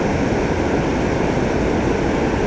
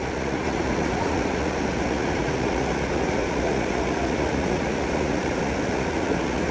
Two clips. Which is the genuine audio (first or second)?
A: first